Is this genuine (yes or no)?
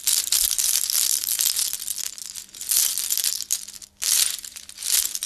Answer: yes